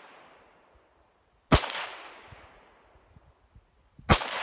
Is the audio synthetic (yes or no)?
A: no